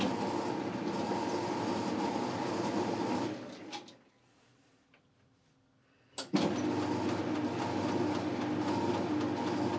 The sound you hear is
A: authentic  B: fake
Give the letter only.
A